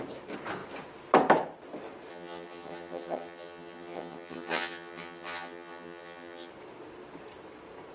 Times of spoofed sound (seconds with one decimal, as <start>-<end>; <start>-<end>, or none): 2.1-6.5